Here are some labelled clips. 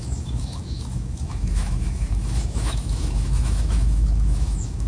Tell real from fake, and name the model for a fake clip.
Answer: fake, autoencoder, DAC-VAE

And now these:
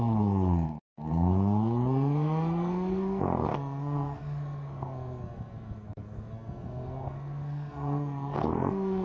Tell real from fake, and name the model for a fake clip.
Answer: fake, codec, SNAC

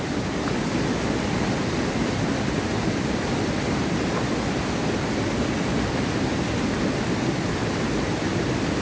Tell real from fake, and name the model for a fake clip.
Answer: real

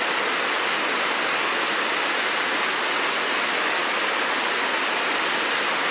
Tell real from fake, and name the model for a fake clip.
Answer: real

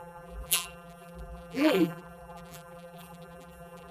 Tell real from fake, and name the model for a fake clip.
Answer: fake, vocoder, BigVGAN v2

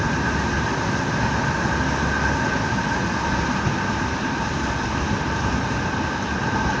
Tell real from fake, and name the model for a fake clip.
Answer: real